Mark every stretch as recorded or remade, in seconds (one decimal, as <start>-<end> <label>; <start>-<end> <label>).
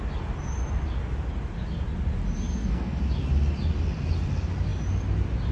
0.0-2.5 recorded; 2.5-3.0 remade; 3.0-5.5 recorded